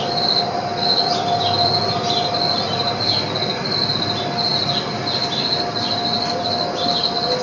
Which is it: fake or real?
real